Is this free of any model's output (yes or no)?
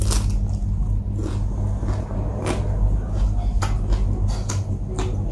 yes